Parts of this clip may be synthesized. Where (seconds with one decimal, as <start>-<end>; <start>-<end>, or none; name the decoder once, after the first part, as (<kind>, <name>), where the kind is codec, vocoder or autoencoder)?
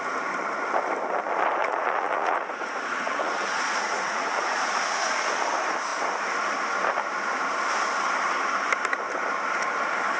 1.6-5.3 (vocoder, Vocos)